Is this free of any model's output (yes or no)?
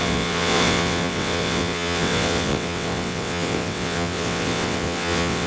no